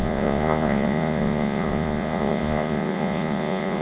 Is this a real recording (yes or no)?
no